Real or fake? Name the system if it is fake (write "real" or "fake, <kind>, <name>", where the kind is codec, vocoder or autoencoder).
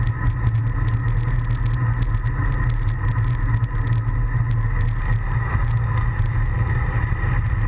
real